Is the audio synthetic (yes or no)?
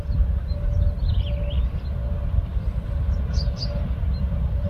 no